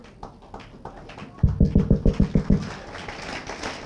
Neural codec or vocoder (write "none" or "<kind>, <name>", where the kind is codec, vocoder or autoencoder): none